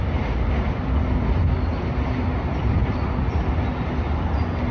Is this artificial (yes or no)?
no